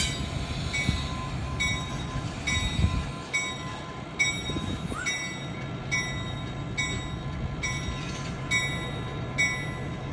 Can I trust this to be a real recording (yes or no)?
yes